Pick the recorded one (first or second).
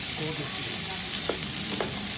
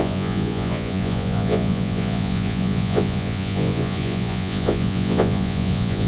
first